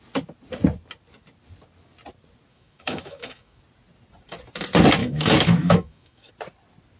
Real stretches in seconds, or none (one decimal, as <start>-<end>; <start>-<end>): 0.0-2.5; 3.6-5.0; 6.3-7.0